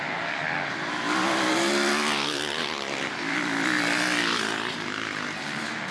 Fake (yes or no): no